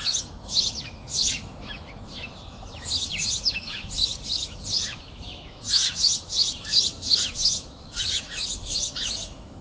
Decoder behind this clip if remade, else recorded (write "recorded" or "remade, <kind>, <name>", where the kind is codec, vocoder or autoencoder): remade, autoencoder, DAC-VAE